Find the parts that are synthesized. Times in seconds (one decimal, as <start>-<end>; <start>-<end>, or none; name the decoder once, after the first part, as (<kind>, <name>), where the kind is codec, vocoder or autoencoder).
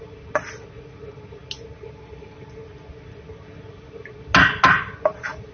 none